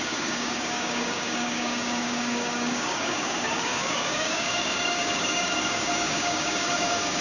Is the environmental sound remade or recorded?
remade